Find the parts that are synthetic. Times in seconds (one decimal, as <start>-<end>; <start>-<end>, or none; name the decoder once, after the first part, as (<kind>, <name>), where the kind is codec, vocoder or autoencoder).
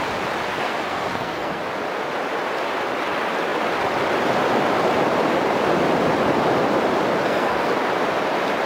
0.5-1.6 (codec, SNAC); 7.2-7.7